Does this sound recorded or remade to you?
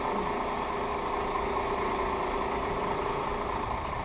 recorded